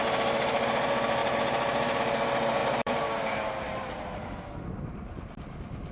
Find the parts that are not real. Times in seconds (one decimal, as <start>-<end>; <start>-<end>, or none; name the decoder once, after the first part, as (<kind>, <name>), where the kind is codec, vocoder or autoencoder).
1.2-2.0 (vocoder, BigVGAN v2); 2.6-4.4